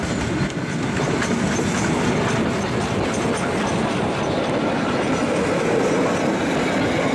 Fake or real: real